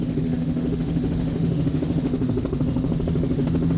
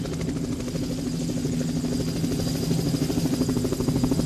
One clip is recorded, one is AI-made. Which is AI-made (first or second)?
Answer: first